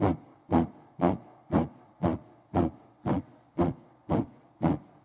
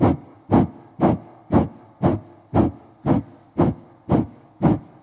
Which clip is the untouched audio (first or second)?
second